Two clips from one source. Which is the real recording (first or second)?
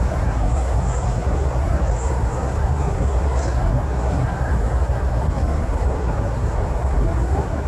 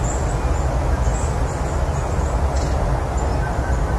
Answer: second